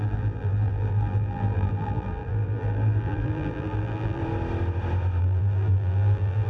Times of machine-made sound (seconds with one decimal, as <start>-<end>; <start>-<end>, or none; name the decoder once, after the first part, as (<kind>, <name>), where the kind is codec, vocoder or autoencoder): 0.0-4.2 (vocoder, BigVGAN v2); 5.2-6.5